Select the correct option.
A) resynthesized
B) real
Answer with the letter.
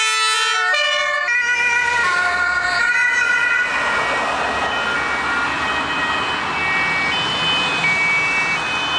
B